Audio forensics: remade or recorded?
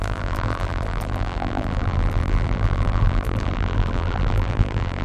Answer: remade